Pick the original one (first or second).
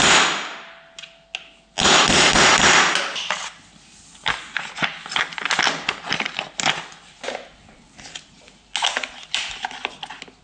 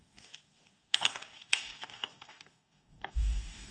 first